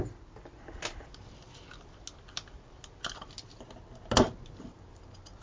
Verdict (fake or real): real